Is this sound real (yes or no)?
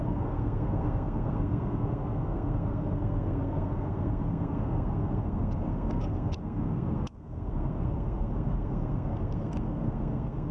no